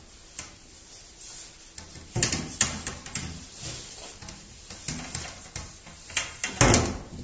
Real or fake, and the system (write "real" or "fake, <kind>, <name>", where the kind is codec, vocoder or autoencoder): real